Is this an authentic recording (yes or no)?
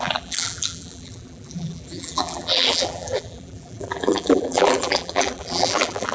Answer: no